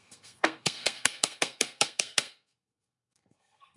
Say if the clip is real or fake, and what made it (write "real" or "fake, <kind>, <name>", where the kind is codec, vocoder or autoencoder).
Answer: fake, codec, SNAC